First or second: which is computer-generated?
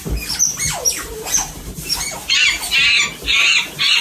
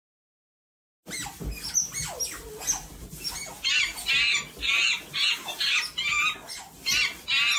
first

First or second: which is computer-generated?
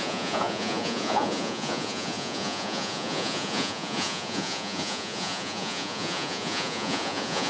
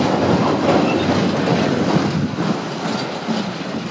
first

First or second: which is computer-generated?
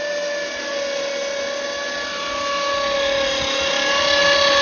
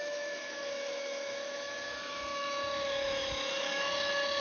second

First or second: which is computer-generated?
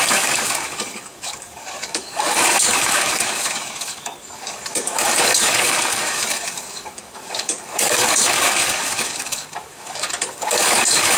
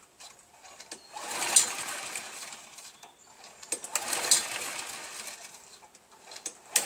first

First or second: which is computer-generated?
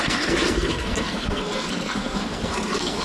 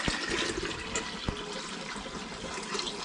first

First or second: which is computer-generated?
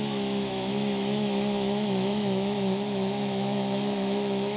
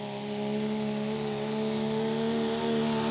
first